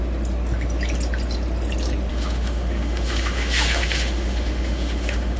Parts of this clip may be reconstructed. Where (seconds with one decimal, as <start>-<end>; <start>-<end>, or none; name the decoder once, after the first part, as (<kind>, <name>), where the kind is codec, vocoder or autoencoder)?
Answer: 2.1-5.4 (autoencoder, DAC-VAE)